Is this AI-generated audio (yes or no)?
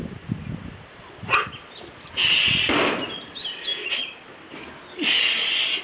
no